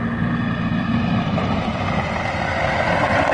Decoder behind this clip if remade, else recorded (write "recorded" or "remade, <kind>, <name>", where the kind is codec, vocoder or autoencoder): recorded